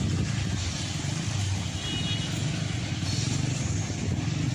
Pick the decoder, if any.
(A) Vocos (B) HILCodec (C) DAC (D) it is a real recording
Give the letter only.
D